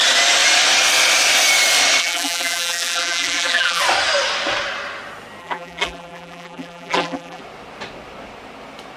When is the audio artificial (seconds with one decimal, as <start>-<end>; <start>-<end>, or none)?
2.0-3.8; 5.4-7.4